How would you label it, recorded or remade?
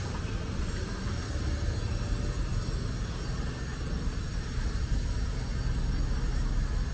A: recorded